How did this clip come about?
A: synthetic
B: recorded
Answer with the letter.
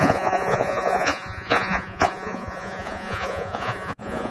A